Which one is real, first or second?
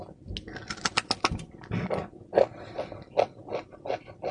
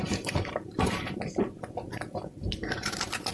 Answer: first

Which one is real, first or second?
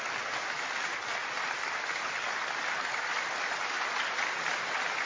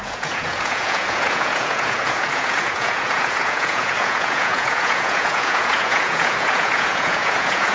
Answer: first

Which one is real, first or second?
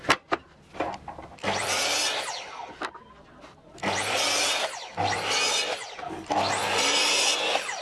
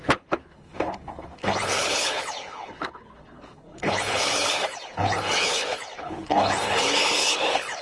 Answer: first